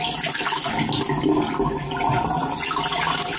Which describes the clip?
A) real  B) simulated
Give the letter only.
A